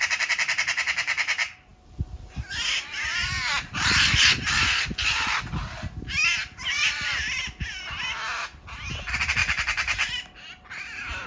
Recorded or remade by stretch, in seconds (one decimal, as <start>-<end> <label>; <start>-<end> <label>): 0.0-1.7 recorded; 1.7-2.8 remade; 2.8-3.5 recorded; 3.5-4.6 remade; 4.6-6.4 recorded; 6.4-7.4 remade; 7.4-9.4 recorded; 9.4-10.1 remade; 10.1-11.3 recorded